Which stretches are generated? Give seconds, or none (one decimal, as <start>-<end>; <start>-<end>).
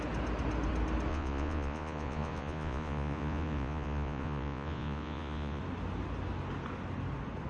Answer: 1.1-5.6